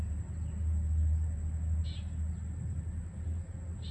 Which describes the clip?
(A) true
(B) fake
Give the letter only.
A